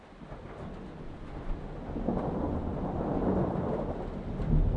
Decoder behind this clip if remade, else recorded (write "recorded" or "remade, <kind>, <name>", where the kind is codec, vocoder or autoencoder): recorded